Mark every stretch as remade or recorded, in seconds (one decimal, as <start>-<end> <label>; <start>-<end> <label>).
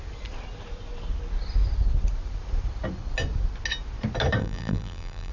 0.0-4.4 recorded; 4.4-5.3 remade